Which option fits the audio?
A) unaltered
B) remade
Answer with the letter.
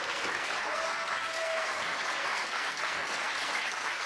B